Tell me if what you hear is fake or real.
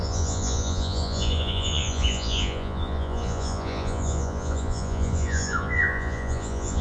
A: fake